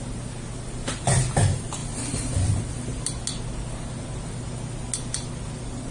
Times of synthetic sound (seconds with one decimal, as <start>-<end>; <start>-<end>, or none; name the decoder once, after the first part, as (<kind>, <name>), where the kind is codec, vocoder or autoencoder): none